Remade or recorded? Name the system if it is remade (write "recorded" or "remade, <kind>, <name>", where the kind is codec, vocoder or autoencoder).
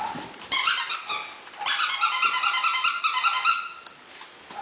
recorded